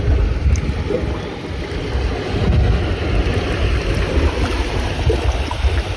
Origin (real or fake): real